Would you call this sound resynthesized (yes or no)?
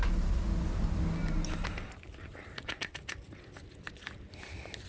no